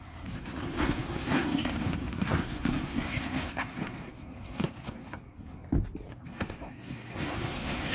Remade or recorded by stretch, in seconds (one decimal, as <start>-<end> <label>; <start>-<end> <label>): 0.0-5.6 remade; 5.6-6.1 recorded; 6.1-7.9 remade